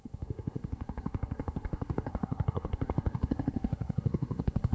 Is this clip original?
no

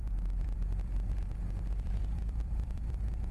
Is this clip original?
no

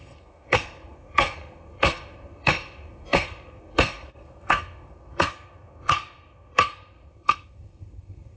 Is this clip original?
no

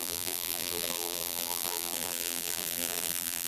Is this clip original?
no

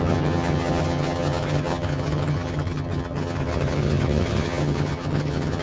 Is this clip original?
no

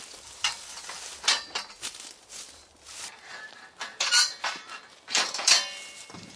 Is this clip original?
yes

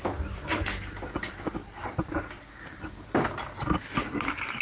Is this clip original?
yes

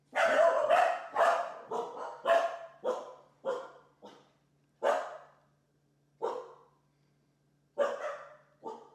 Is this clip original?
yes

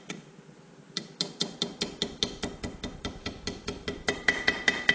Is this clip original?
yes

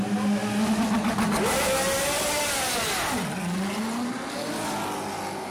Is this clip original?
yes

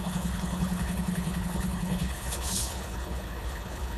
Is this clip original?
no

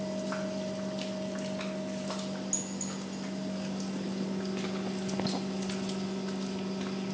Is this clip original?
yes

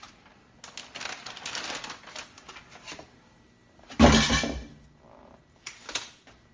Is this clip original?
yes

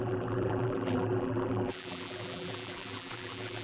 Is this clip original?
no